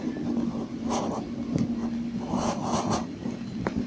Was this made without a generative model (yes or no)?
yes